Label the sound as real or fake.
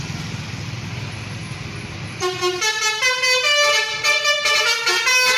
real